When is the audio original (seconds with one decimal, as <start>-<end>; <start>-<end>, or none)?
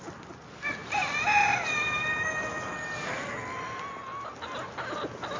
0.0-5.4